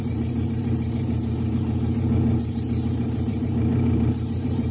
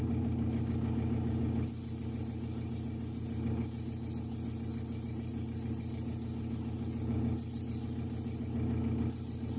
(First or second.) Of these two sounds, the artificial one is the first